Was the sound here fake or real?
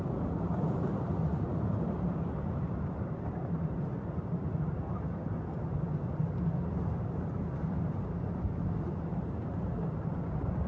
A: real